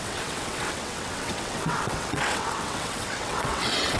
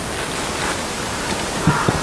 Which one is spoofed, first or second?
first